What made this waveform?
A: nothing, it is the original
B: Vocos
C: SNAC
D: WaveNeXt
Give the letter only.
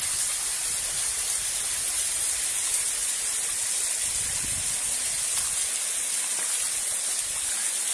A